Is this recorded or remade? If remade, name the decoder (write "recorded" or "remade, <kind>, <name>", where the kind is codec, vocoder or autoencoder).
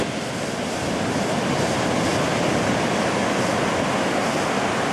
recorded